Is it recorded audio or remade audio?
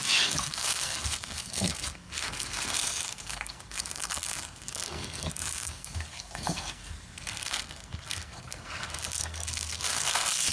remade